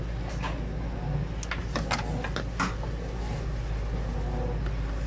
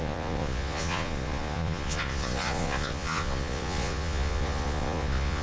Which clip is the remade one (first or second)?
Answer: second